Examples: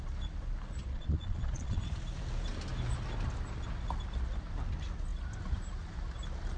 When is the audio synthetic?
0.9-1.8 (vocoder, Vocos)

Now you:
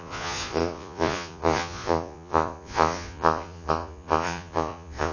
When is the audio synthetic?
0.0-5.1 (vocoder, Vocos)

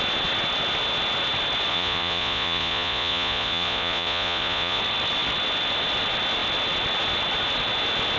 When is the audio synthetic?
1.7-4.8 (vocoder, Vocos)

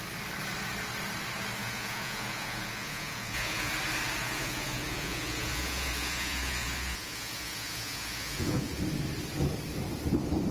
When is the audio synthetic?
1.6-3.7 (vocoder, Vocos); 4.2-8.8

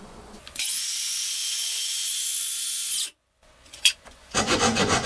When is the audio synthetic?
0.0-5.1 (vocoder, Vocos)

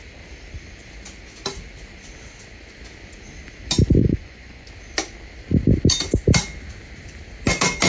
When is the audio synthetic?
4.0-4.7 (vocoder, Vocos)